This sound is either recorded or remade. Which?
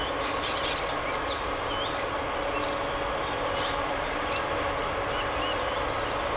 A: recorded